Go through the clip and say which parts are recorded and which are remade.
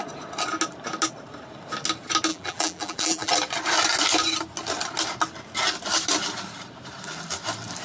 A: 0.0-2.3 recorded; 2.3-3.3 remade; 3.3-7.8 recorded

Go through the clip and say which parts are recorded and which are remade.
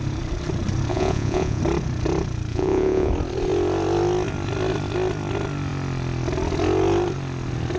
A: 0.0-0.9 recorded; 0.9-1.6 remade; 1.6-2.5 recorded; 2.5-3.1 remade; 3.1-7.8 recorded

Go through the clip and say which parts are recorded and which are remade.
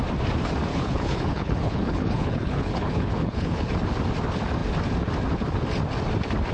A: 0.0-0.7 recorded; 0.7-3.7 remade; 3.7-6.5 recorded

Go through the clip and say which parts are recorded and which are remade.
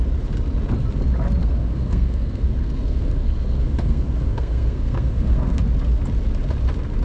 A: 0.0-1.4 recorded; 1.4-5.6 remade; 5.6-7.0 recorded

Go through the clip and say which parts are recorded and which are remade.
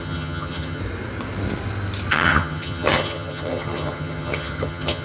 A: 0.0-0.8 remade; 0.8-2.1 recorded; 2.1-5.0 remade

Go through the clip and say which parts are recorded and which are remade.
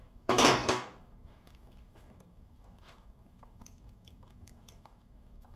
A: 0.0-5.6 remade